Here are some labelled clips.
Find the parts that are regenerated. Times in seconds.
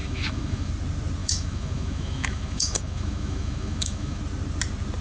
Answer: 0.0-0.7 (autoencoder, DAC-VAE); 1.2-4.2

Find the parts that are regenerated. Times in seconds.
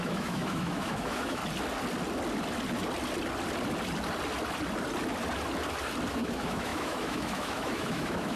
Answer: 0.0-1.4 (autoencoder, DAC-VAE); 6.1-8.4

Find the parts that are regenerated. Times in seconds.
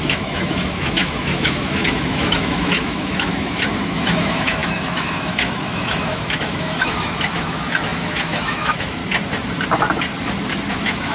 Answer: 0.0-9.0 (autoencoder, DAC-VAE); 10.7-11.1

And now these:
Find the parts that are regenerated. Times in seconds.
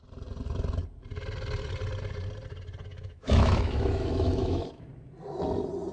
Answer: 2.9-4.9 (autoencoder, DAC-VAE)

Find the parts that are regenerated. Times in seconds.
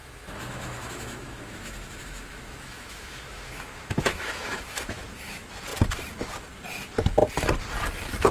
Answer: 0.0-5.0 (autoencoder, DAC-VAE)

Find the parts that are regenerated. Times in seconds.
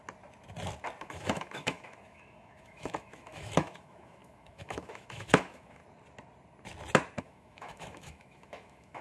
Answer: 1.0-5.8 (autoencoder, DAC-VAE); 7.2-9.0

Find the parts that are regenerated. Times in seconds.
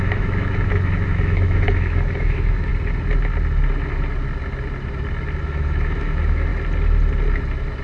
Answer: 0.0-2.7 (autoencoder, DAC-VAE); 5.4-6.5